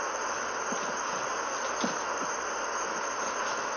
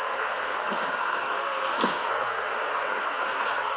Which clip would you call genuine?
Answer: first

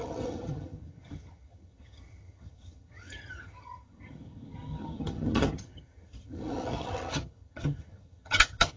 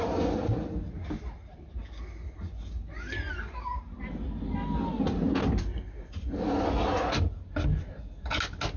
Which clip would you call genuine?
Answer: second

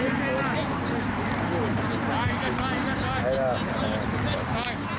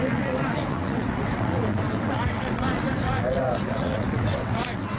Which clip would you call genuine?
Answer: first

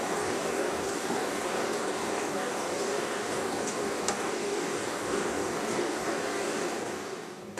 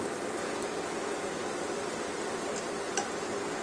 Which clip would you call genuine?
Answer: second